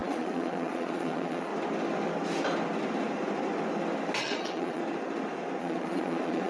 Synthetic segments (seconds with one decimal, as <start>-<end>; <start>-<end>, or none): 0.0-1.5; 4.2-4.8; 5.6-6.5